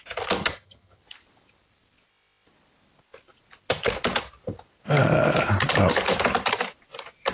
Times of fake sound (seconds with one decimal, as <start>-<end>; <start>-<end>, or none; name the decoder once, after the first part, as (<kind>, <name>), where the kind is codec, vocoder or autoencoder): 0.4-1.0 (vocoder, HiFi-GAN)